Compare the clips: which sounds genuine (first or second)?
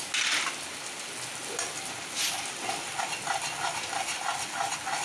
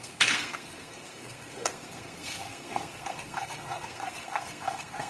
first